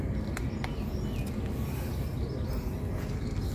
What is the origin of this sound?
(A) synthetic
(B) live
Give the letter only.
B